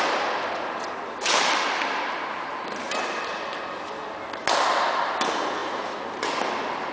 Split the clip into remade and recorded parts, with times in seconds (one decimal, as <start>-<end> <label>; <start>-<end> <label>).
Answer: 0.0-5.6 recorded; 5.6-6.4 remade; 6.4-6.9 recorded

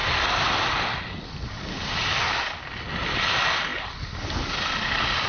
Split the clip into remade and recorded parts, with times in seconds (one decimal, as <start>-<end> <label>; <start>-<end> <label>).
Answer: 0.0-5.3 recorded

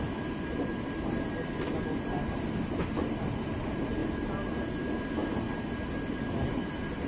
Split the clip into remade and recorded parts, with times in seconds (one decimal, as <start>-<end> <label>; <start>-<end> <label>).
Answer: 0.0-7.1 recorded

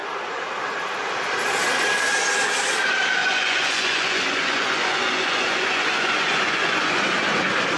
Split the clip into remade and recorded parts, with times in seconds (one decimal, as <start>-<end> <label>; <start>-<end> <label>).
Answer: 0.0-3.2 recorded; 3.2-7.0 remade; 7.0-7.8 recorded

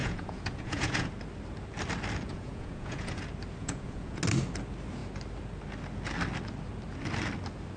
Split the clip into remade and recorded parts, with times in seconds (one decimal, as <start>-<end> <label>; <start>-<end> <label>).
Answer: 0.0-1.1 remade; 1.1-2.3 recorded; 2.3-3.2 remade; 3.2-3.6 recorded; 3.6-4.2 remade; 4.2-7.8 recorded

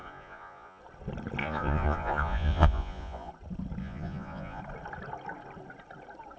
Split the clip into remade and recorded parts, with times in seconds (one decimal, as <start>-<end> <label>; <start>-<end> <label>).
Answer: 0.0-0.8 remade; 0.8-1.4 recorded; 1.4-3.3 remade; 3.3-3.8 recorded; 3.8-4.6 remade; 4.6-6.4 recorded